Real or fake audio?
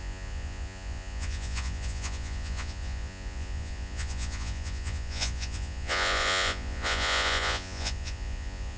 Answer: fake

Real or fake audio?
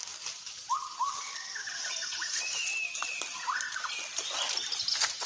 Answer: real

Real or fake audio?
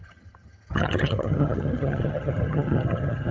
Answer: fake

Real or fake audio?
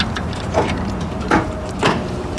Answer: fake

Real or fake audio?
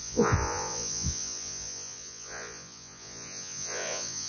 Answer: fake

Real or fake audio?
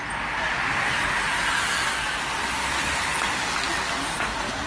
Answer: real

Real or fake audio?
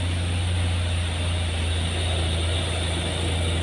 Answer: real